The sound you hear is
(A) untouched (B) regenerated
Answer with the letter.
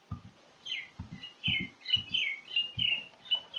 B